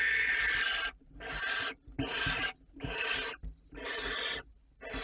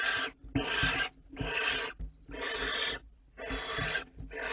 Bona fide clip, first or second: second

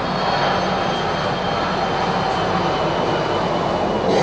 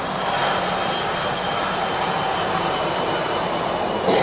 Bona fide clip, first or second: first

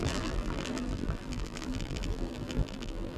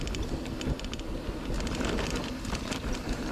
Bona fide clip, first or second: second